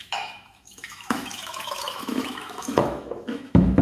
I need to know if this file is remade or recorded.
remade